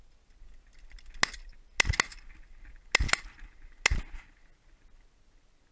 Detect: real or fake real